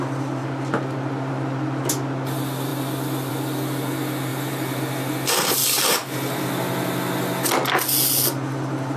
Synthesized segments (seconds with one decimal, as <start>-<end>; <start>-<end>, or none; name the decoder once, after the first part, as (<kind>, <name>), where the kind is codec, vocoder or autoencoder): 4.3-4.8 (vocoder, BigVGAN v2); 5.6-6.4